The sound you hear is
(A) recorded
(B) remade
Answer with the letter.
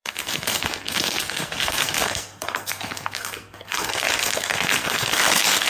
B